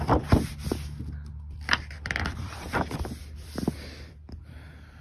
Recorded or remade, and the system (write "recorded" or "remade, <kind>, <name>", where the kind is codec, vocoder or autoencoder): remade, vocoder, BigVGAN v2